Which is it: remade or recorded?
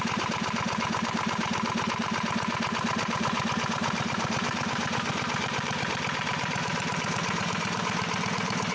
remade